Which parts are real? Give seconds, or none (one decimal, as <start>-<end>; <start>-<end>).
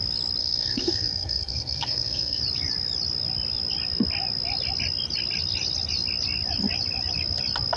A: 0.0-0.4; 2.4-7.8